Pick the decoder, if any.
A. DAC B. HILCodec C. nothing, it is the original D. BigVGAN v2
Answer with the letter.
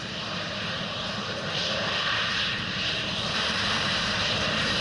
D